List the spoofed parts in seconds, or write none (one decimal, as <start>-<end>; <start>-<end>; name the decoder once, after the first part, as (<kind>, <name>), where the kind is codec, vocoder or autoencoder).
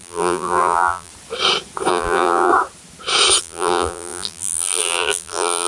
0.0-1.1 (vocoder, BigVGAN v2); 1.9-2.5; 3.4-5.7